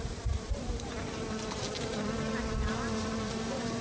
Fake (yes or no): yes